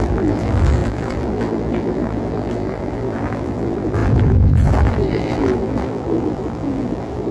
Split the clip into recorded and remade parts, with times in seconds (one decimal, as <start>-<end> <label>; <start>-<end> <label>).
0.0-7.3 remade